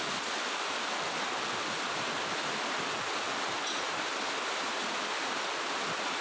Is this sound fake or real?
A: real